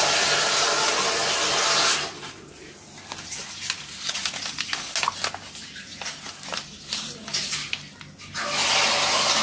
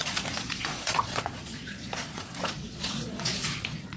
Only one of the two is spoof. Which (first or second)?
second